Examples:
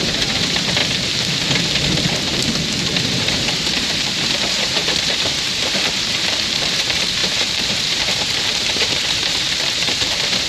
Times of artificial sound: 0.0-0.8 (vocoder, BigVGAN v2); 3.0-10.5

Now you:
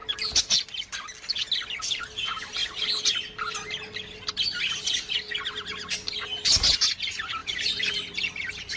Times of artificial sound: 7.4-8.8 (vocoder, BigVGAN v2)